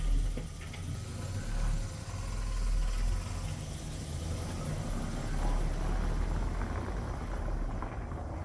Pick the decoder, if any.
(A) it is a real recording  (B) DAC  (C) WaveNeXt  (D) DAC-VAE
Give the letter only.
A